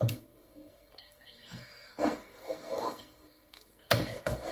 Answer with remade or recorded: remade